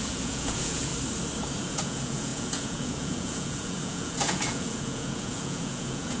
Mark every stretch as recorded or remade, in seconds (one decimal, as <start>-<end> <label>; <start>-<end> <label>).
0.0-0.9 remade; 0.9-1.6 recorded; 1.6-6.2 remade